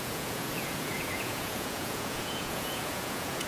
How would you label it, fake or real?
fake